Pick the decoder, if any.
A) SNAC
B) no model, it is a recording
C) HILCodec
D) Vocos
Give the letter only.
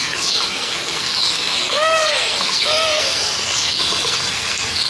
A